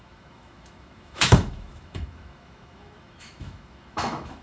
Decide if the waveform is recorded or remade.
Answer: remade